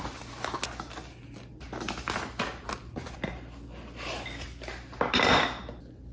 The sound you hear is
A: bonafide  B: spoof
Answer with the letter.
A